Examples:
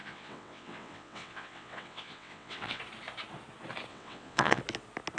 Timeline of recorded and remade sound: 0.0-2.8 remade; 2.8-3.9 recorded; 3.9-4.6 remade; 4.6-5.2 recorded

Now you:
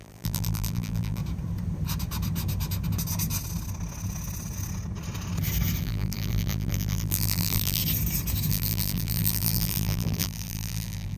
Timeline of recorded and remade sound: 0.0-1.2 remade; 1.2-5.8 recorded; 5.8-7.8 remade; 7.8-8.5 recorded; 8.5-11.2 remade

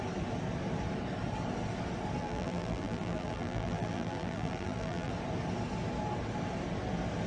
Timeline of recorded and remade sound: 0.0-2.2 recorded; 2.2-5.1 remade; 5.1-7.3 recorded